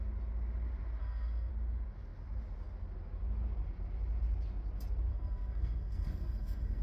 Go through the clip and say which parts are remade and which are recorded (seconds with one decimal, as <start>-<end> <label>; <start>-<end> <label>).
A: 0.0-1.0 recorded; 1.0-1.5 remade; 1.5-5.1 recorded; 5.1-6.8 remade